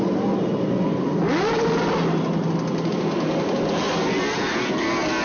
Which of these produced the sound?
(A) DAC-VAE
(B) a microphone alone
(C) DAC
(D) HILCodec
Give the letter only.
B